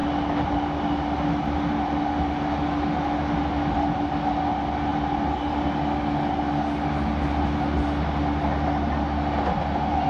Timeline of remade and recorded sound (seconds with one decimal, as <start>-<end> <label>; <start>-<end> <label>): 0.0-10.1 recorded